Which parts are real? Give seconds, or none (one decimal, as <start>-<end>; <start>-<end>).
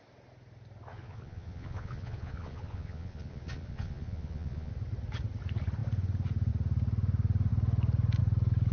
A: 0.0-0.9; 4.7-8.7